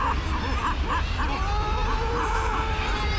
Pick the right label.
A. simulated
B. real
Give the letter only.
B